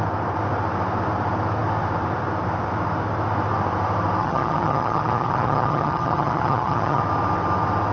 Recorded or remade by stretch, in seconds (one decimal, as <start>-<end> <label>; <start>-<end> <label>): 0.0-4.2 recorded; 4.2-7.0 remade; 7.0-7.9 recorded